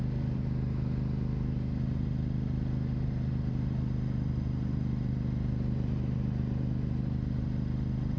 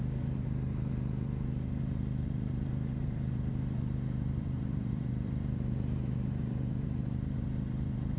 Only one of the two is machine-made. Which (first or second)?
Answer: second